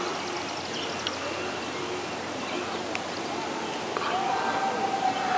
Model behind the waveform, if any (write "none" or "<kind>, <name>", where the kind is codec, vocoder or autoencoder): none